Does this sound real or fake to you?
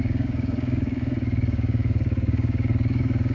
fake